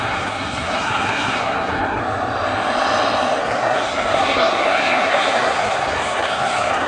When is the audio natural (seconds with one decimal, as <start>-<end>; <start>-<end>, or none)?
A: 2.0-3.4